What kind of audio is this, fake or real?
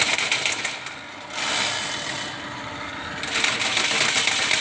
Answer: real